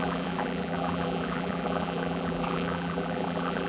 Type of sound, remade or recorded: remade